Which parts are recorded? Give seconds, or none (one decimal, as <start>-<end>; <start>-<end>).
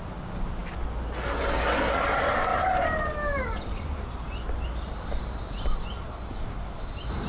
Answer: 0.0-7.3